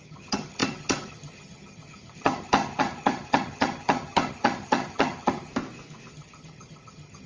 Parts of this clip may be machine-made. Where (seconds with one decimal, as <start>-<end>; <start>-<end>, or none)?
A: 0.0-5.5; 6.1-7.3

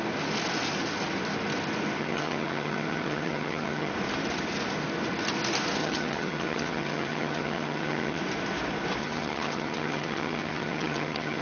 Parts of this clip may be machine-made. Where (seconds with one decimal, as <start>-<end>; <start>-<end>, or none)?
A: 2.0-3.9; 5.8-8.2; 9.0-11.4

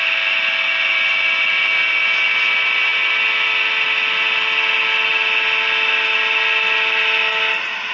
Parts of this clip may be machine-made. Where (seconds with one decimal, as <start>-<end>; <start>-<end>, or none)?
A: none